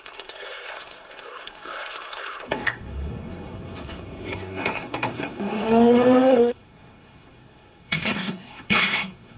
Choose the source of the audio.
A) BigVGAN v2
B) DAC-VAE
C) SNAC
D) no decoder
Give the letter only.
C